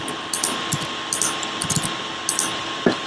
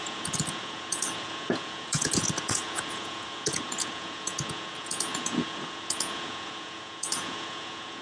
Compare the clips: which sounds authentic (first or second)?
first